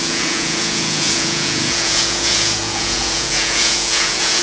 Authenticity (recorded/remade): remade